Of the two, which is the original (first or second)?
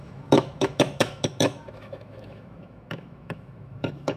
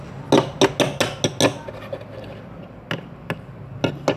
second